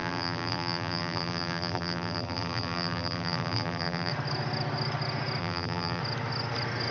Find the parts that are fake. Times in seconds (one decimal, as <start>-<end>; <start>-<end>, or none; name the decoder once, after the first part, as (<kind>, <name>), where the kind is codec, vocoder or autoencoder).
0.0-4.1 (vocoder, BigVGAN v2); 5.4-6.0